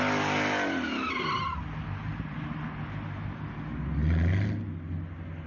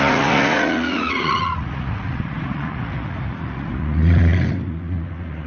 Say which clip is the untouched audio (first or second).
first